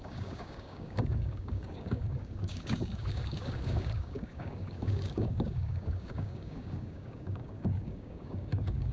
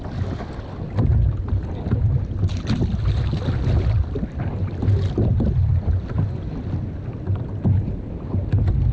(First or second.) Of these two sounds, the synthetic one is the first